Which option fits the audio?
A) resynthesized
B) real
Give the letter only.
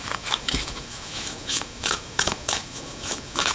A